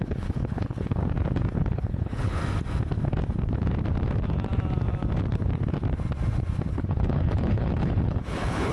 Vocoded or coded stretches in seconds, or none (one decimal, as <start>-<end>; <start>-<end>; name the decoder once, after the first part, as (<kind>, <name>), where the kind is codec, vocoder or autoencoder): 0.0-1.0 (codec, HILCodec); 1.6-2.4; 6.7-8.7